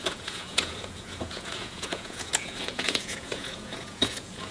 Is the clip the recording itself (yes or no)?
no